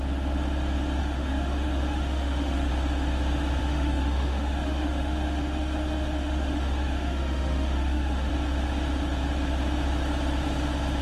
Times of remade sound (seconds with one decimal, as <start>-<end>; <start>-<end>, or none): 1.0-2.7; 3.6-8.3